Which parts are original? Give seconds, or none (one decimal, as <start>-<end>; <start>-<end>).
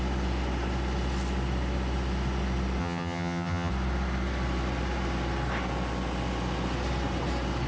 0.0-2.8; 3.7-7.7